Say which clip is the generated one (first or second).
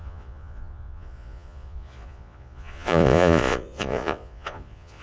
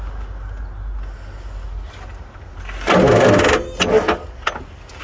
first